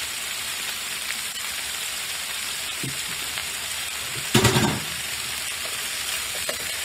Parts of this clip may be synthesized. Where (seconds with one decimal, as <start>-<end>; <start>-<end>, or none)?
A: 0.0-6.8